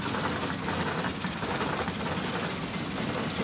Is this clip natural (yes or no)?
yes